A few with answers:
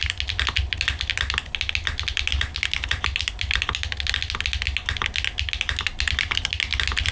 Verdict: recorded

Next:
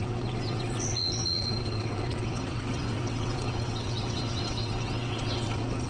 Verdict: remade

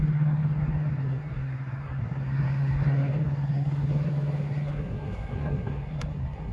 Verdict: remade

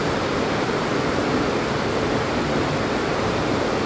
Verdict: recorded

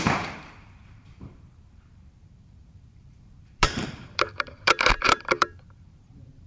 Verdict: remade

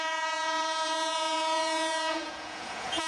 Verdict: remade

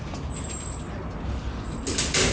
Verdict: recorded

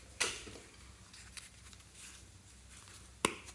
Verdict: recorded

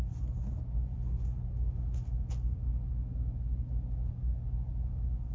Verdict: recorded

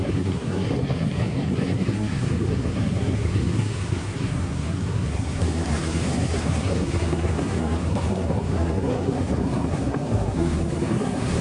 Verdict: remade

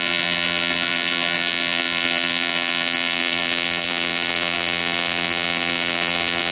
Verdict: remade